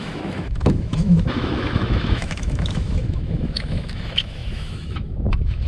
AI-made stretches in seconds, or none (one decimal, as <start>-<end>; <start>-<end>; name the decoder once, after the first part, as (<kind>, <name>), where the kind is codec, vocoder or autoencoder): 0.0-5.7 (autoencoder, DAC-VAE)

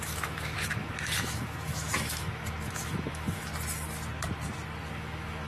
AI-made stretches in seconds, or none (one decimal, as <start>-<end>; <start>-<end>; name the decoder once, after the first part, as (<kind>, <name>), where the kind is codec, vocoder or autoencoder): 0.0-3.5 (autoencoder, DAC-VAE); 4.9-5.5